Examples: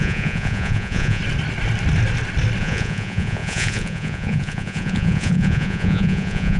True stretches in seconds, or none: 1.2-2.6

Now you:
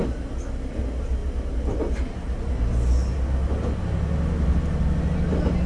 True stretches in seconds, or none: 0.0-5.7